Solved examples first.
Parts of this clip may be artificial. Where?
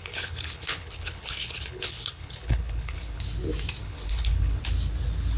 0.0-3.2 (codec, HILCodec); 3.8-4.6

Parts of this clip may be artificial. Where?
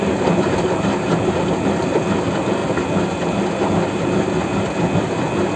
none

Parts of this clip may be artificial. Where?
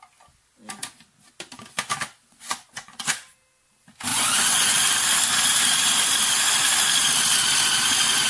2.3-3.1 (vocoder, Vocos); 4.1-4.8